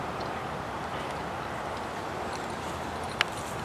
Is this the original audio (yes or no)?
yes